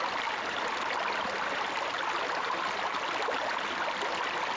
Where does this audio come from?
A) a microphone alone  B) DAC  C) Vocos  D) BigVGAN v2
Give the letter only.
A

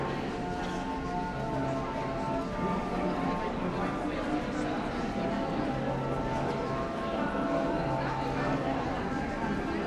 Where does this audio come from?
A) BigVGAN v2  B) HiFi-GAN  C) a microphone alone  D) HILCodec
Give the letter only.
C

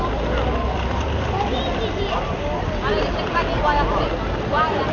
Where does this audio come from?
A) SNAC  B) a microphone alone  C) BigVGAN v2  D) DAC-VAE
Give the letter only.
B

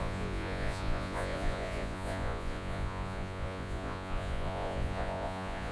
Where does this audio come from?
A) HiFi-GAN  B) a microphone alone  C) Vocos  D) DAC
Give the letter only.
C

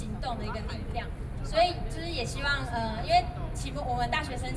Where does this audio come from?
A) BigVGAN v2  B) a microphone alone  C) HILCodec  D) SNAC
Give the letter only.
B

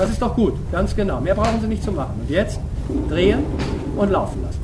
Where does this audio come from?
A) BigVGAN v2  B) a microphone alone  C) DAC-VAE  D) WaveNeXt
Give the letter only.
B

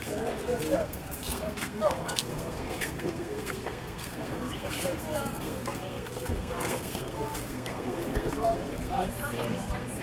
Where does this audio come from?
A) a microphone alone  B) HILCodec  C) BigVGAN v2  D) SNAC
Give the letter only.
D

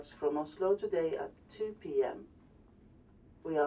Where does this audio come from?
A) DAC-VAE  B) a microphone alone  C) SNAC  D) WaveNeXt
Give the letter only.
B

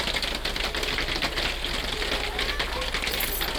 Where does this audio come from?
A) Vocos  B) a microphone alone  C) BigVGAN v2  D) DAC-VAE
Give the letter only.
B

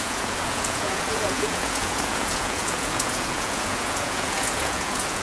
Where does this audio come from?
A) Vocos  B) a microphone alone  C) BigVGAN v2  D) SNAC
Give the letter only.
A